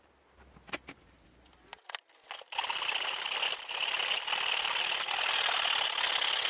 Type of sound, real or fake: real